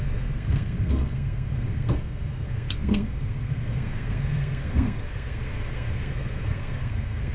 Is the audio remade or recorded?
remade